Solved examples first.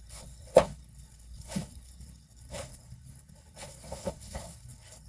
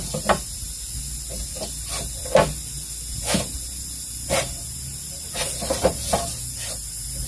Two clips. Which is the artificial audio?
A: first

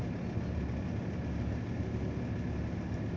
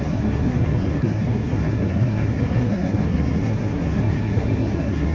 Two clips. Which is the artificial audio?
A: second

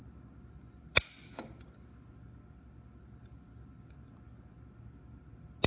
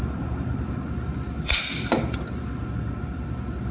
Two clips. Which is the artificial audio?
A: second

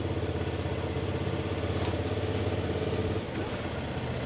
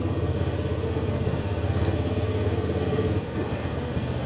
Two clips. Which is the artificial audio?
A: second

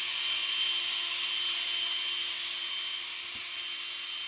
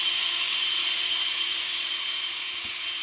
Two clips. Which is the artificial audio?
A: second